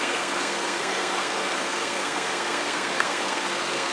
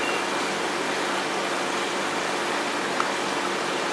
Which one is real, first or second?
second